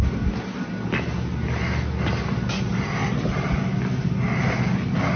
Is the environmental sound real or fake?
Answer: real